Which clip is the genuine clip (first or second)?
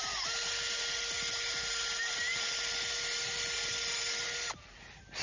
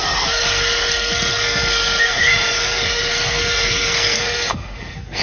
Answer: first